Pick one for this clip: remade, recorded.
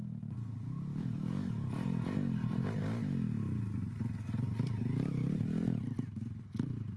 recorded